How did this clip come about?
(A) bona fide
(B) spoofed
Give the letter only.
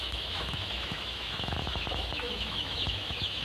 B